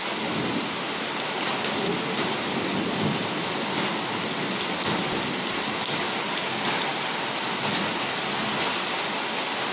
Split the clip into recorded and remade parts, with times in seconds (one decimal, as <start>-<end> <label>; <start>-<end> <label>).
0.0-9.7 recorded